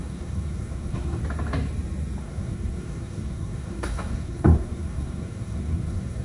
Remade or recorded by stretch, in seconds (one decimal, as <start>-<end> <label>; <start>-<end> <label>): 0.0-1.2 remade; 1.2-2.2 recorded; 2.2-6.2 remade